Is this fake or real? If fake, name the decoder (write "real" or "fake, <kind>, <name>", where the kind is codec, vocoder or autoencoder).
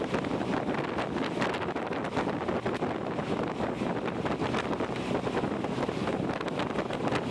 real